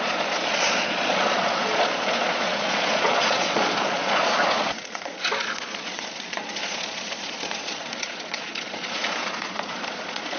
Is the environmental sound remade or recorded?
remade